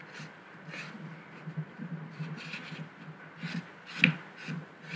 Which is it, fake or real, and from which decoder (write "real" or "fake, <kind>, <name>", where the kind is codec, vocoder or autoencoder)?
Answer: real